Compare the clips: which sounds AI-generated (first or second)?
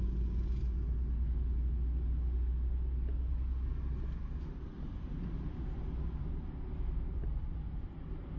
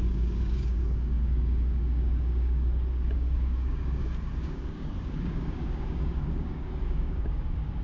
second